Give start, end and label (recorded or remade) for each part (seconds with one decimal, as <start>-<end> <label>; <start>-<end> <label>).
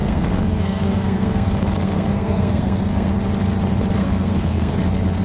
0.0-3.1 remade; 3.1-4.0 recorded; 4.0-4.7 remade; 4.7-5.2 recorded